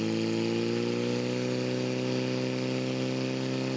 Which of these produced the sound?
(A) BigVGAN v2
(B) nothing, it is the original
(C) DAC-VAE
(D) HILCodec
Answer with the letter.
B